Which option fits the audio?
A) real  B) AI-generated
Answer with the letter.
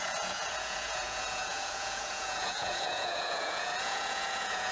B